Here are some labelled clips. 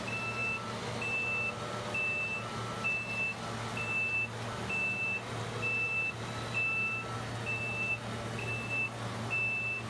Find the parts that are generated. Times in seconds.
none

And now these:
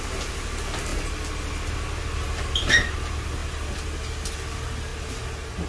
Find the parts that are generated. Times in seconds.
none

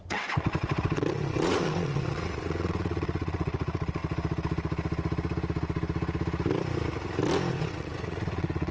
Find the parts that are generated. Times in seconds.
0.0-4.0 (vocoder, WaveNeXt); 7.5-8.7

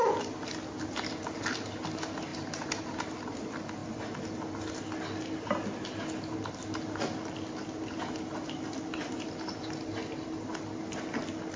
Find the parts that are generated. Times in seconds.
none

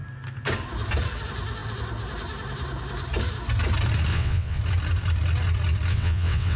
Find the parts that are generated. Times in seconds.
4.1-4.6 (vocoder, WaveNeXt); 5.9-6.6

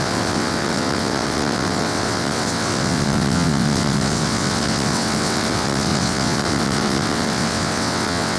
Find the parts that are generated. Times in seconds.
0.0-8.4 (vocoder, WaveNeXt)

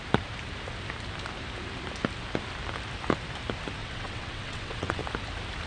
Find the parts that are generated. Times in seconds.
3.8-5.0 (vocoder, WaveNeXt)